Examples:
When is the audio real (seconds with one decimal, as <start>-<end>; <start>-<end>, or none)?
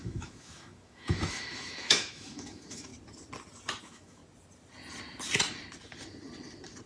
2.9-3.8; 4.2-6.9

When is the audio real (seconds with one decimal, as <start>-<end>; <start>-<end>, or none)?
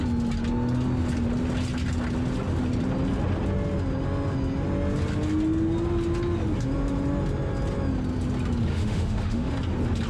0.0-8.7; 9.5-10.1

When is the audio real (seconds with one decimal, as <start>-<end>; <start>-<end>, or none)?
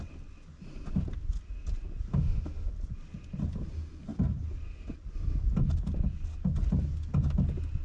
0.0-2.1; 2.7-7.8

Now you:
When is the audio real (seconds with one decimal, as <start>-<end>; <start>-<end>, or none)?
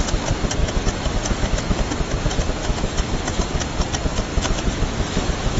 0.0-0.6; 1.8-2.6; 3.1-4.3